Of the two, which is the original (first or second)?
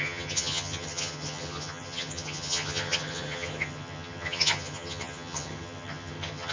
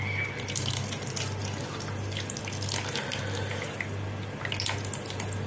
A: second